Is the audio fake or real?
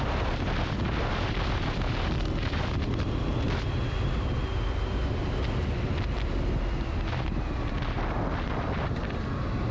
real